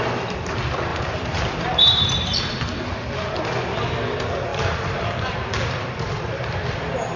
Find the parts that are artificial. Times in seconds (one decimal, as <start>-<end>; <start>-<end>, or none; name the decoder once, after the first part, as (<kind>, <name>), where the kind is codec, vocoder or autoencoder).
0.9-2.0 (vocoder, BigVGAN v2); 4.5-6.4